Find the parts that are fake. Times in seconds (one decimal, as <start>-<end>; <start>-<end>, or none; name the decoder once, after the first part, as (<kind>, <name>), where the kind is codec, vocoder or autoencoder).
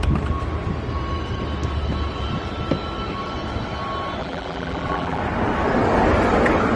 4.2-5.2 (vocoder, BigVGAN v2)